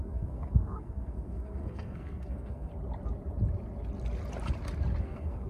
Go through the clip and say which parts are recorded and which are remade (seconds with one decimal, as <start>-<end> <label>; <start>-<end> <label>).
0.0-2.7 remade; 2.7-5.0 recorded; 5.0-5.5 remade